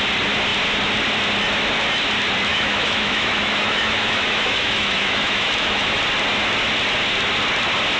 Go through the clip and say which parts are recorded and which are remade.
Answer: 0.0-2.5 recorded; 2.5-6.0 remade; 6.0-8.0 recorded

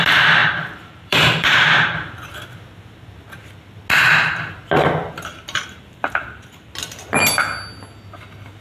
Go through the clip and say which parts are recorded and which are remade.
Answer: 0.0-0.4 recorded; 0.4-2.3 remade; 2.3-5.3 recorded; 5.3-6.7 remade; 6.7-8.6 recorded

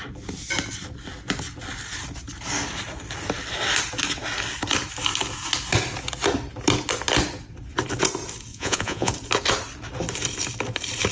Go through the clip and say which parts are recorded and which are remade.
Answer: 0.0-8.5 recorded; 8.5-9.1 remade; 9.1-11.1 recorded

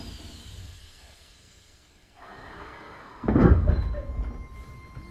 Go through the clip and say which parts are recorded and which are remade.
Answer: 0.0-0.6 recorded; 0.6-3.7 remade; 3.7-5.1 recorded

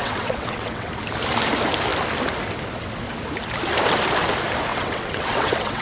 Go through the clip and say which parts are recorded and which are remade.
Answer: 0.0-0.9 remade; 0.9-4.7 recorded; 4.7-5.8 remade